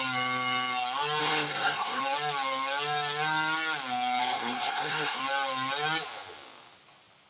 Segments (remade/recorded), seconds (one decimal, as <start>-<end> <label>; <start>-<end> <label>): 0.0-1.2 recorded; 1.2-2.0 remade; 2.0-4.2 recorded; 4.2-5.2 remade; 5.2-7.3 recorded